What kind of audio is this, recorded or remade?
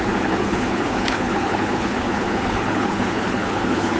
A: remade